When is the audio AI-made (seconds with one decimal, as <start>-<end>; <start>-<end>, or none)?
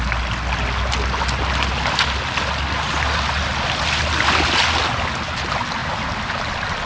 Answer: 5.8-6.5